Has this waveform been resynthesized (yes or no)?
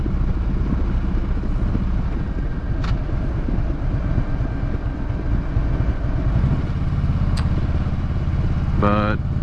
no